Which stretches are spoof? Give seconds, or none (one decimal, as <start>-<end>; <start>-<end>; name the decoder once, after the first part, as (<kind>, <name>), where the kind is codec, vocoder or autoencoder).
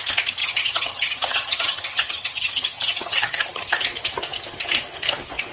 0.4-3.7 (vocoder, HiFi-GAN)